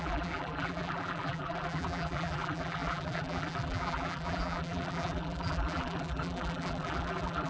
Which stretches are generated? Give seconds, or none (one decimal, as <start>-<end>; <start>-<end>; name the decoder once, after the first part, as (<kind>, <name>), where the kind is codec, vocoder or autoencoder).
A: 0.0-7.5 (vocoder, BigVGAN v2)